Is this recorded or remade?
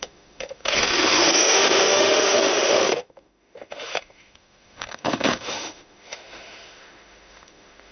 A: remade